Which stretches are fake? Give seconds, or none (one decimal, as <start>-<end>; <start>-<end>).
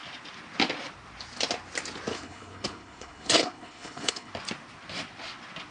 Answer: 2.1-4.3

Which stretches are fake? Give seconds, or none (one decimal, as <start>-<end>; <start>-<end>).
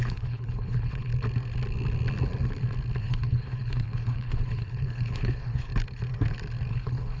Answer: 0.0-1.1; 3.0-5.7; 6.7-7.2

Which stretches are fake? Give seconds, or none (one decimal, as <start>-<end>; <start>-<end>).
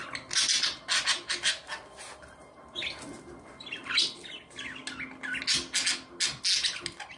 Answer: none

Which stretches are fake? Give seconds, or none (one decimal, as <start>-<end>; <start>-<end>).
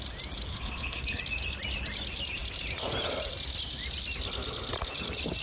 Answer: 0.5-1.2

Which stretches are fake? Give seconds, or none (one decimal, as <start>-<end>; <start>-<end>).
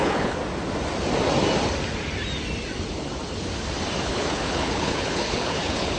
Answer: 0.0-0.4; 4.0-6.0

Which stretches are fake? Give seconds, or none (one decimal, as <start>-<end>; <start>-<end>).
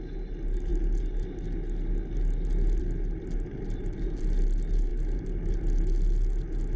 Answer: none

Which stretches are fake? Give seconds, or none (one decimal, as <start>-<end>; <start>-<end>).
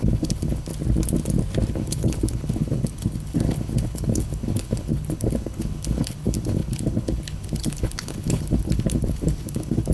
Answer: 0.0-0.7; 1.7-9.9